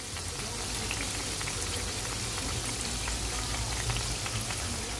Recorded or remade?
recorded